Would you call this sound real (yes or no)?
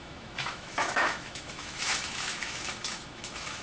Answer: no